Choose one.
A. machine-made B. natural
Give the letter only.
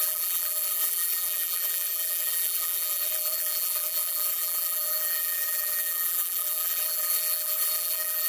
A